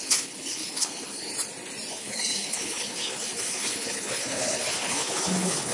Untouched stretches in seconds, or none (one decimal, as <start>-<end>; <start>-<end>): 1.3-1.9